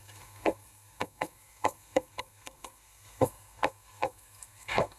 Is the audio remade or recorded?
remade